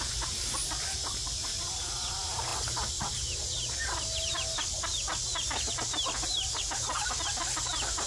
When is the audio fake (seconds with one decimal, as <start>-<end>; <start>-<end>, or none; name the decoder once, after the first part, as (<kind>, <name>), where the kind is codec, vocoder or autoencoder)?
none